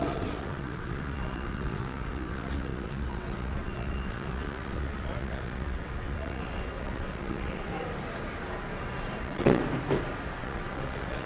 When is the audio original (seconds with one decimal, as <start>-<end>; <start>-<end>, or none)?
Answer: 7.7-9.2; 9.6-10.4